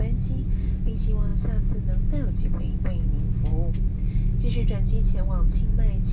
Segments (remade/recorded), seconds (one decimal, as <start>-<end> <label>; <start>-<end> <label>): 0.0-6.1 recorded